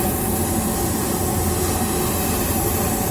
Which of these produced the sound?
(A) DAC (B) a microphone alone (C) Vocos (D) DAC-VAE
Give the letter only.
B